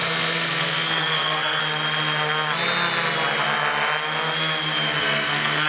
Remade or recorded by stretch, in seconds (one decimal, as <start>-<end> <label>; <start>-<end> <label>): 0.0-1.6 remade; 1.6-5.0 recorded; 5.0-5.7 remade